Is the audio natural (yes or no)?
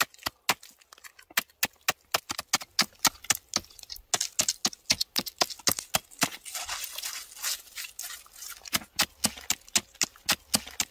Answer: yes